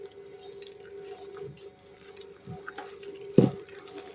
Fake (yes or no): no